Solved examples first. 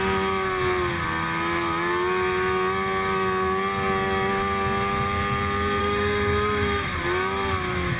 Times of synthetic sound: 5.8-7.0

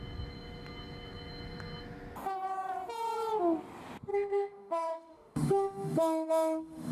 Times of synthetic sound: 4.1-6.9

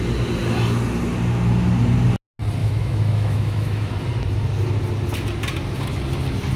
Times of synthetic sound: 2.6-3.9